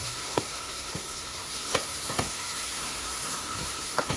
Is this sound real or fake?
fake